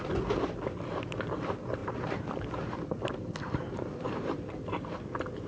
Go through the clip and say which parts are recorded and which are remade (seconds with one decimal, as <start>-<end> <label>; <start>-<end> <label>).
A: 0.0-1.8 recorded; 1.8-4.6 remade; 4.6-5.5 recorded